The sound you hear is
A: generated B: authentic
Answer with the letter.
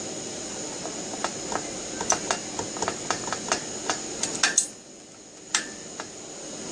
B